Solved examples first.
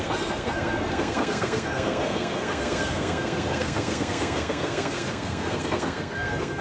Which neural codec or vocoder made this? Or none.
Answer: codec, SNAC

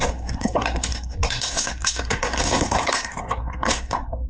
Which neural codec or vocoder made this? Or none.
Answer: codec, SNAC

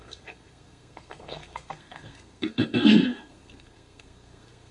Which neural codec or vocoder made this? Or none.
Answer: codec, SNAC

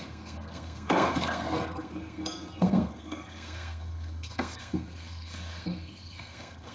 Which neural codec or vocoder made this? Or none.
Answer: codec, SNAC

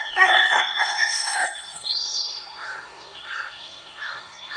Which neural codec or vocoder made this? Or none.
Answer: codec, SNAC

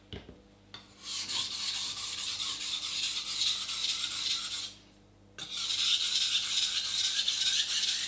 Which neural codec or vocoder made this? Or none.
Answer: none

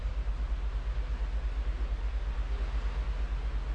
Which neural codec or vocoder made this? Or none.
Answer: none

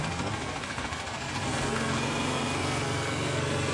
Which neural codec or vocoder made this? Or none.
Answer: codec, SNAC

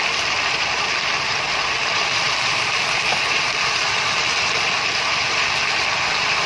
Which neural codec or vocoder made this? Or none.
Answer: none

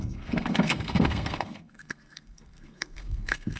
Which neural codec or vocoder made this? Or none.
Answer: codec, SNAC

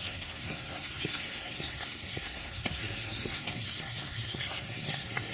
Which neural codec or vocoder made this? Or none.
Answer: codec, SNAC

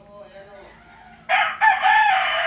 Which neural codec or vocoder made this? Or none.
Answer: none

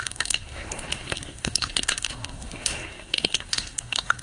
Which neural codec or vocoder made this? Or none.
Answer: codec, SNAC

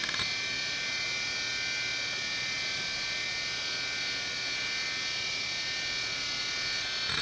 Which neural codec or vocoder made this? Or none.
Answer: none